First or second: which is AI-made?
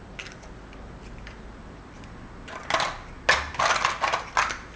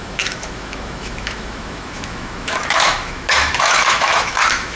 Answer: second